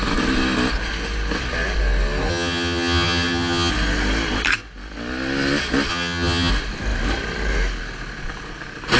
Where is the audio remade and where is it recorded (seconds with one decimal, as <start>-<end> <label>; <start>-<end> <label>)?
0.0-2.3 recorded; 2.3-3.7 remade; 3.7-5.9 recorded; 5.9-6.5 remade; 6.5-9.0 recorded